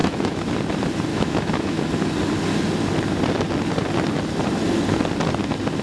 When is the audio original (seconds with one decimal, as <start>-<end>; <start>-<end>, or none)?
0.5-1.1; 1.8-5.8